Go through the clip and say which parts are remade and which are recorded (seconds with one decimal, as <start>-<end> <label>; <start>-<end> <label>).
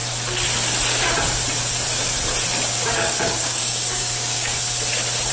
0.0-2.7 recorded; 2.7-4.5 remade; 4.5-5.3 recorded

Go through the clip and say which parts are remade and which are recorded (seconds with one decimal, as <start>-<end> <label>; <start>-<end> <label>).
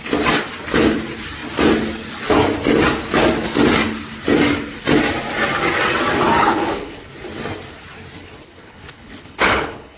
0.0-6.4 recorded; 6.4-7.1 remade; 7.1-8.2 recorded; 8.2-10.0 remade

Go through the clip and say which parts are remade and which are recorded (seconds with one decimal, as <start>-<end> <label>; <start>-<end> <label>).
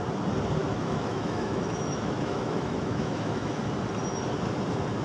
0.0-0.6 recorded; 0.6-3.6 remade; 3.6-5.0 recorded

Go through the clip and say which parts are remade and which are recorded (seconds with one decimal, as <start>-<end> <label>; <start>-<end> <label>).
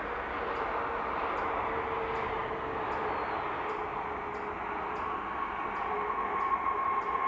0.0-7.3 recorded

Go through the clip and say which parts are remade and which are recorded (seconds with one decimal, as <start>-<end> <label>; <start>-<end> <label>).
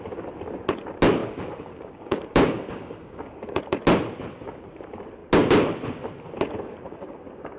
0.0-1.2 recorded; 1.2-3.6 remade; 3.6-6.7 recorded; 6.7-7.6 remade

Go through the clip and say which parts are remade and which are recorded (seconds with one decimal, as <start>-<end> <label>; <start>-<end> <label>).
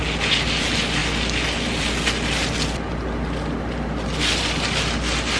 0.0-5.4 recorded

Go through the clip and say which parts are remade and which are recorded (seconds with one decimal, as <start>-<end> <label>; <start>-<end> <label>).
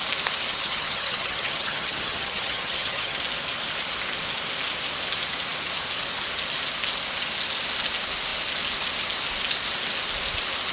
0.0-0.5 recorded; 0.5-3.2 remade; 3.2-10.7 recorded